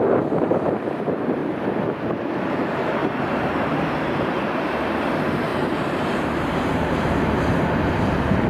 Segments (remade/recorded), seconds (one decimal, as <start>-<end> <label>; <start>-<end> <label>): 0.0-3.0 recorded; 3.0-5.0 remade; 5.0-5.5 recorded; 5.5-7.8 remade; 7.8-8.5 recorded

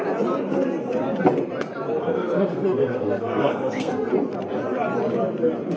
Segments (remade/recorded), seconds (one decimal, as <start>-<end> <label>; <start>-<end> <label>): 0.0-2.1 recorded; 2.1-4.1 remade; 4.1-5.8 recorded

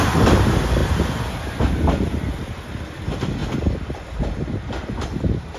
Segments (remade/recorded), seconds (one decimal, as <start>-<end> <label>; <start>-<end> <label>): 0.0-5.6 recorded